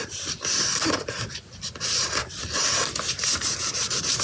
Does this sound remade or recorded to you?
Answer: recorded